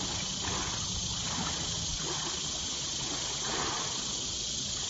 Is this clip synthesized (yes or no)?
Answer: no